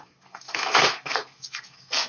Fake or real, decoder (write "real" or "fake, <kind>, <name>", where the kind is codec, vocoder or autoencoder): fake, codec, SNAC